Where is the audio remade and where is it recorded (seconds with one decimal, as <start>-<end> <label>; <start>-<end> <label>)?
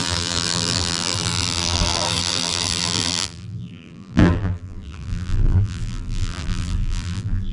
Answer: 0.0-7.5 remade